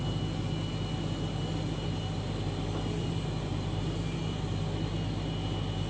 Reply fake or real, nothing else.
real